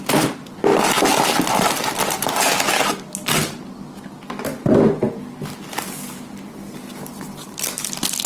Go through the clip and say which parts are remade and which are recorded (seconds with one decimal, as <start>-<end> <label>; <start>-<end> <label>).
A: 0.0-8.3 recorded